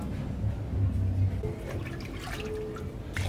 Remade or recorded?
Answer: recorded